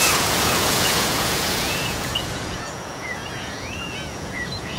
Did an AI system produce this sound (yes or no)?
yes